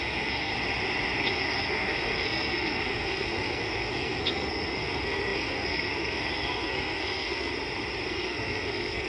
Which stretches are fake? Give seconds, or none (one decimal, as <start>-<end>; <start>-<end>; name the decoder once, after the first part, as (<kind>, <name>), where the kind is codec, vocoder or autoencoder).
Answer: 0.0-0.5 (codec, SNAC); 1.2-7.5; 8.1-9.1